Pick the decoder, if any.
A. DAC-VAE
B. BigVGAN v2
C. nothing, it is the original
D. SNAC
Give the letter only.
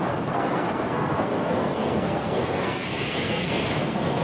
D